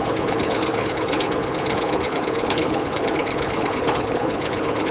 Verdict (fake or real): fake